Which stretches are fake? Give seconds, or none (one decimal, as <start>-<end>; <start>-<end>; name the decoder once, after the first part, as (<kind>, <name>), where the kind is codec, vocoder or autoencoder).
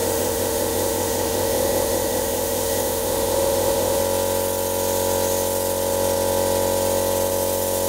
0.0-4.0 (autoencoder, DAC-VAE)